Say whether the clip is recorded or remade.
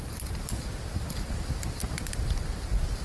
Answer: recorded